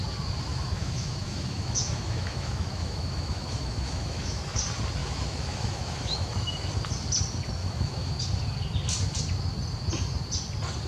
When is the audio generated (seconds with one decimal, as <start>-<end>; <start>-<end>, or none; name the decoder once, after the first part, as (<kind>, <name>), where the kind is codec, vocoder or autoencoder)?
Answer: 0.5-4.6 (autoencoder, DAC-VAE); 5.0-6.7; 7.6-8.2